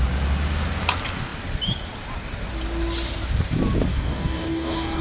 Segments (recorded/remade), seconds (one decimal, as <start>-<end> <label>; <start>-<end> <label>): 0.0-3.9 recorded; 3.9-5.0 remade

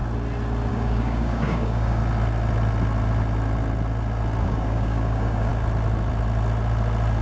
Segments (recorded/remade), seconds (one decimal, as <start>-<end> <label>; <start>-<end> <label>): 0.0-0.7 recorded; 0.7-2.0 remade; 2.0-4.4 recorded; 4.4-5.5 remade; 5.5-7.2 recorded

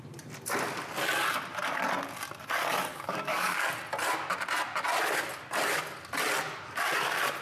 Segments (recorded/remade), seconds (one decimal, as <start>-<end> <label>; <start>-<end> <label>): 0.0-2.9 recorded; 2.9-3.7 remade; 3.7-7.4 recorded

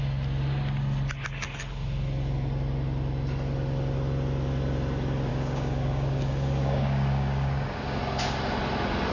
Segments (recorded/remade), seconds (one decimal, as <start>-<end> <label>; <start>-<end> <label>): 0.0-5.3 recorded; 5.3-8.0 remade; 8.0-9.1 recorded

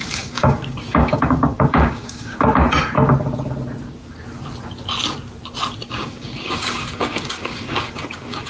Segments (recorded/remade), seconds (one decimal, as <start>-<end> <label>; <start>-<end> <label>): 0.0-2.5 remade; 2.5-5.9 recorded; 5.9-8.5 remade

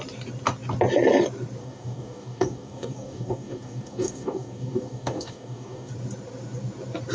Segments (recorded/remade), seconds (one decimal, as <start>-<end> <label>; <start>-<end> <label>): 0.0-1.6 recorded; 1.6-5.9 remade; 5.9-7.1 recorded

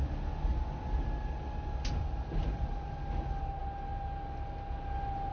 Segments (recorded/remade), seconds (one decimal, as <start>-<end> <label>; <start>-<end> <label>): 0.0-5.3 recorded

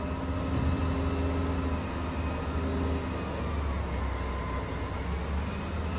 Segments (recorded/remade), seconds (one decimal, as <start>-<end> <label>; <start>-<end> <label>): 0.0-6.0 recorded